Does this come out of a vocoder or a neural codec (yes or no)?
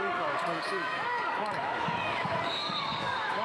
yes